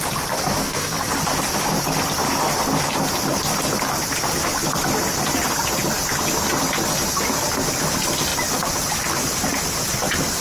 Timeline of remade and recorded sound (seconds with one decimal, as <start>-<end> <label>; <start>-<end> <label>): 0.0-0.6 recorded; 0.6-1.1 remade; 1.1-10.4 recorded

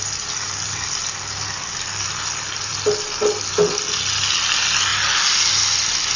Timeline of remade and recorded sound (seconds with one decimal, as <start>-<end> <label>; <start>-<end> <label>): 0.0-6.2 recorded

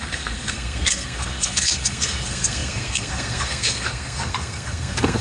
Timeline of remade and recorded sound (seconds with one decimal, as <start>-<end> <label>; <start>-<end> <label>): 0.0-5.2 remade

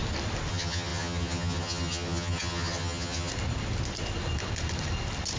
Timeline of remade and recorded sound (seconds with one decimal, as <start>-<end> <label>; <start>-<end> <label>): 0.0-0.5 recorded; 0.5-3.3 remade; 3.3-5.4 recorded